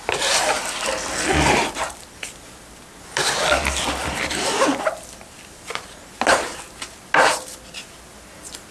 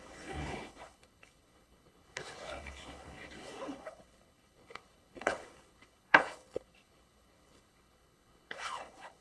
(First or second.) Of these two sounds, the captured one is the first